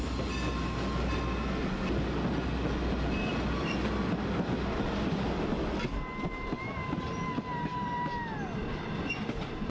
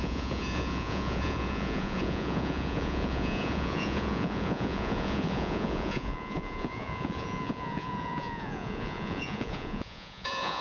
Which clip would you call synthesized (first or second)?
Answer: second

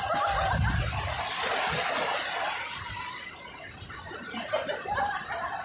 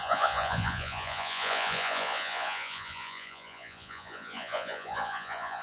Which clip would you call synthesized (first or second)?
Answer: second